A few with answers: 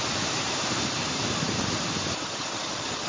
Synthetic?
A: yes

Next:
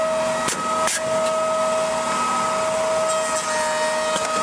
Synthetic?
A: no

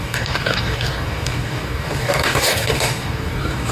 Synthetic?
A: yes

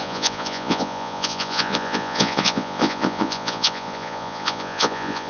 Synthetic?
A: yes